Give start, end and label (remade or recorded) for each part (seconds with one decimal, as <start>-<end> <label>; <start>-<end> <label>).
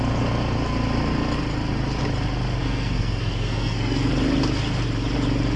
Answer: 0.0-2.6 recorded; 2.6-4.1 remade; 4.1-5.6 recorded